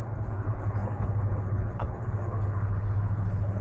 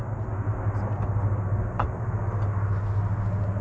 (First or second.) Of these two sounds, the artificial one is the first